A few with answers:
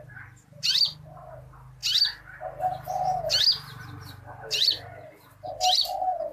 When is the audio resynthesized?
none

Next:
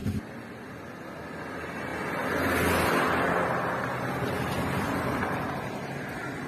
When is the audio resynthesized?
none

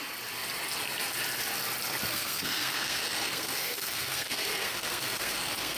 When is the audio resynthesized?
2.1-5.8 (codec, SNAC)

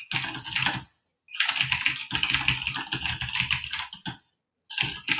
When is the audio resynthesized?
none

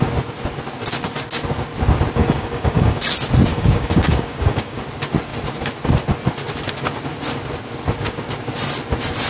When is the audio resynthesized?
2.2-3.0 (codec, DAC); 3.5-4.8

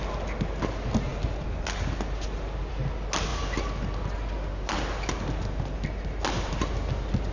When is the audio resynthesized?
none